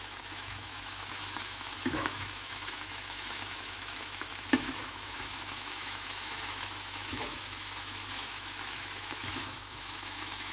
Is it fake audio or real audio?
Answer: fake